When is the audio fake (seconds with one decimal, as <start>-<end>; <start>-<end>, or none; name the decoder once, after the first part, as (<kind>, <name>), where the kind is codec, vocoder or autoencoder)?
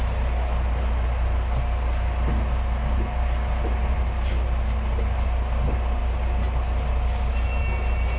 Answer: none